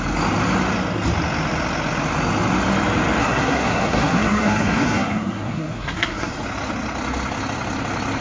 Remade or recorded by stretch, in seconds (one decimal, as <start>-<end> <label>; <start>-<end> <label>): 0.0-3.2 recorded; 3.2-6.3 remade; 6.3-8.2 recorded